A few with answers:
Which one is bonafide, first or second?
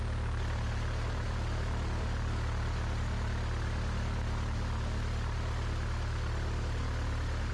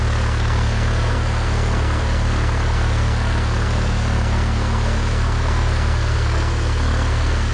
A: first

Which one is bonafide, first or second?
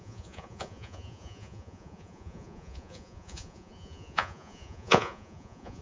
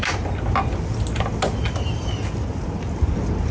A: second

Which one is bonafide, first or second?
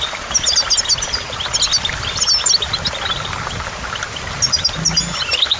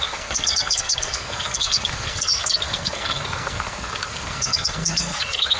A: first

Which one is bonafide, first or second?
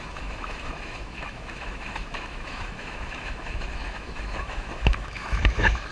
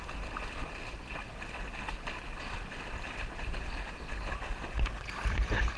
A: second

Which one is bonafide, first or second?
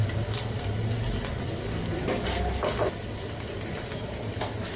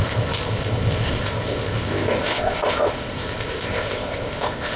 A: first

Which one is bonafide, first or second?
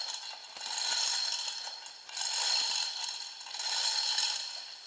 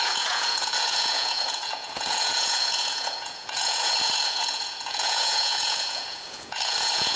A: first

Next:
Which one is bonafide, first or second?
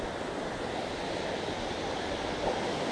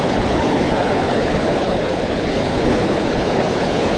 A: first